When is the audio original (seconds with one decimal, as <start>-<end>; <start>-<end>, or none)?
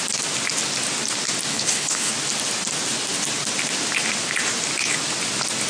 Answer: 0.0-1.5; 2.1-5.7